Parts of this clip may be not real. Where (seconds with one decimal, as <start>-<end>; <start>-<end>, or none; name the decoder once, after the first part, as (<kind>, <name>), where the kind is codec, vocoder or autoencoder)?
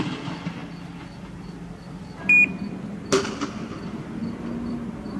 none